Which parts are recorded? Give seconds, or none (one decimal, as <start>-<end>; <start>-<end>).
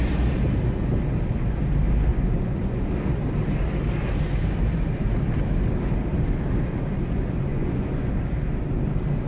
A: 0.0-2.1; 2.8-7.5; 8.1-9.3